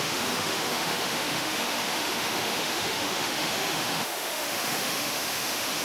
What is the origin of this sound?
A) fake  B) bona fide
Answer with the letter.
A